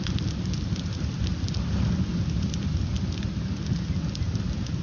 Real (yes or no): yes